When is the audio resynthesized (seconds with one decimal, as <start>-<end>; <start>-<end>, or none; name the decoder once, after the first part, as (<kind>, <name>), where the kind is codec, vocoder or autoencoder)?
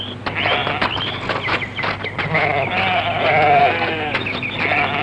none